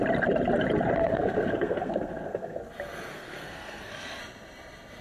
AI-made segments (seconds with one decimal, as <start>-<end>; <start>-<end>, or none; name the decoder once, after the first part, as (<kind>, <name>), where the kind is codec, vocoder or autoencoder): 1.0-2.6 (codec, SNAC); 3.1-4.2